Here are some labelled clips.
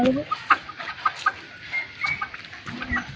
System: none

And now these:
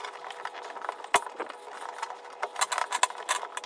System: none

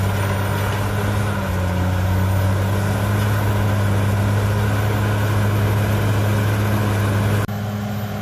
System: none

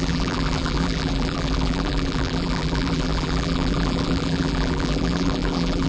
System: vocoder, BigVGAN v2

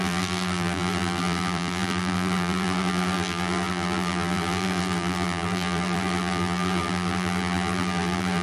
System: vocoder, BigVGAN v2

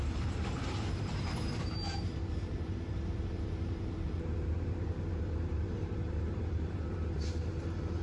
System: vocoder, BigVGAN v2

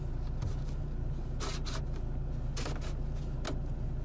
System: none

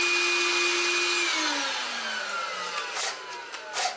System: none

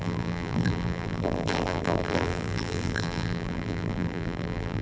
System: vocoder, BigVGAN v2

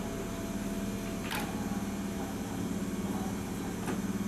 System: none